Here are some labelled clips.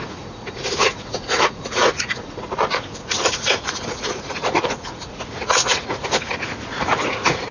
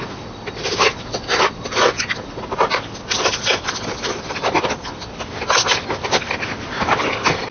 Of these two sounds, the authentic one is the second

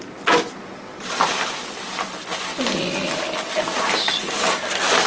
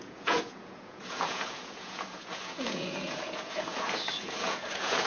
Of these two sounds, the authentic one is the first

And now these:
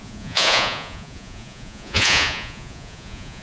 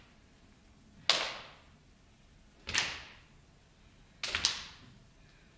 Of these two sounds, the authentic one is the second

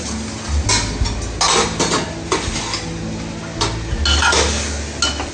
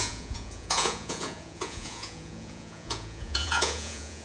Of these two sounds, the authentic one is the first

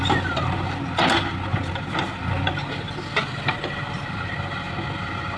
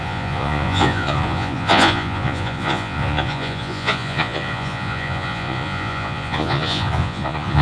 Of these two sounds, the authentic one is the first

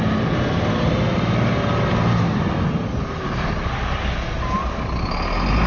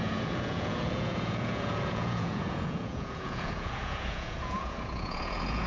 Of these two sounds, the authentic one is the first